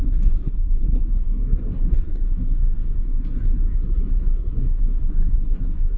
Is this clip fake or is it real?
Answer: fake